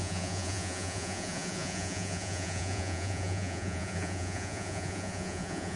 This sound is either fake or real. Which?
fake